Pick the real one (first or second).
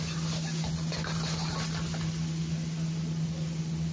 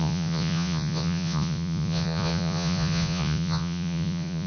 first